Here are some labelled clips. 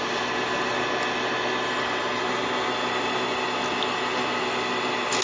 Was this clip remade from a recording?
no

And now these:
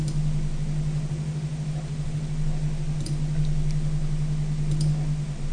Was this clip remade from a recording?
no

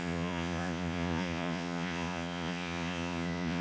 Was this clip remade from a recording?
yes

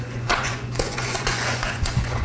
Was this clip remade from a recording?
yes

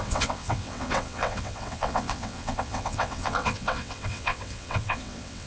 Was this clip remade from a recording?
yes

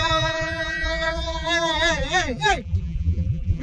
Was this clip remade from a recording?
yes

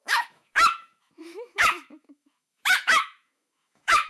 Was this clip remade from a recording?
yes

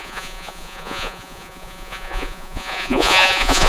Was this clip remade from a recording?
yes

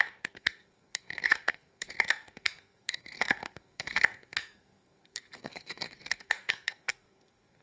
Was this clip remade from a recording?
yes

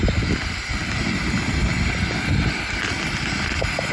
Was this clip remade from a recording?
no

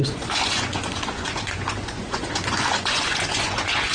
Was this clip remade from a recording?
yes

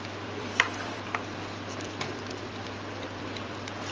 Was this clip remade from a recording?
yes